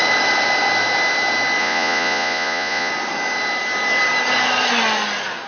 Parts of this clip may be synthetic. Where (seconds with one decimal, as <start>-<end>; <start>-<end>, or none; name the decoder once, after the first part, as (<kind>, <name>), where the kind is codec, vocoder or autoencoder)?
1.6-2.9 (vocoder, Vocos)